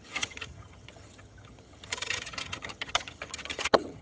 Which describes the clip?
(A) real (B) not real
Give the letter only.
B